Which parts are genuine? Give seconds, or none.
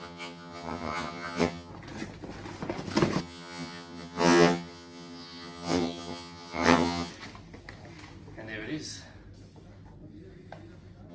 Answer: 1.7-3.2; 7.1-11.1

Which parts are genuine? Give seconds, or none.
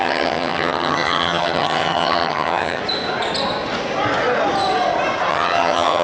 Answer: 2.8-5.3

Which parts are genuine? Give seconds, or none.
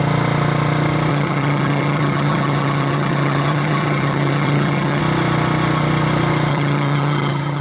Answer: 0.0-1.1; 5.0-6.5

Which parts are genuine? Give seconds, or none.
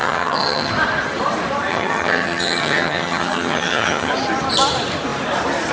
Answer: 0.7-1.7; 4.1-5.7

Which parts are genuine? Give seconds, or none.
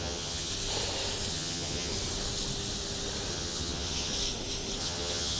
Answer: 0.5-1.3; 1.9-3.3; 4.1-4.8